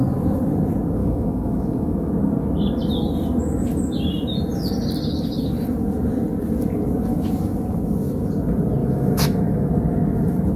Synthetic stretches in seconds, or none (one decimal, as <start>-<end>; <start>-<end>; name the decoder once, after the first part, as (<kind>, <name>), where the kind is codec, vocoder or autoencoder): 1.0-2.1 (autoencoder, DAC-VAE); 8.8-9.7

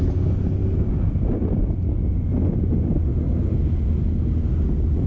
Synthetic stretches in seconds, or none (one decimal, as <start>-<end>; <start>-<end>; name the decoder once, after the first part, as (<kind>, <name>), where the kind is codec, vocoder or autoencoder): none

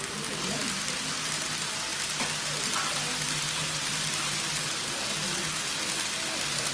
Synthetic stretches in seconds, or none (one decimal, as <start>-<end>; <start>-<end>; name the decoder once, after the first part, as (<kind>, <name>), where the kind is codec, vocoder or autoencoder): none